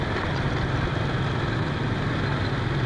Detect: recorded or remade recorded